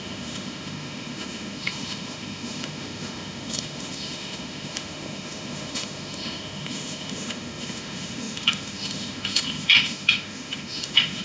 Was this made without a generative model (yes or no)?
no